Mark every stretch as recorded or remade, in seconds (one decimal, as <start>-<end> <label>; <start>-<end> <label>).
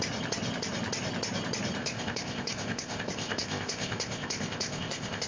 0.0-1.8 recorded; 1.8-5.3 remade